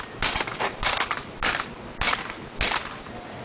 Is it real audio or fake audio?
real